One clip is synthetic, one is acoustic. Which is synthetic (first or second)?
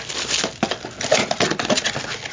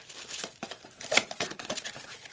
second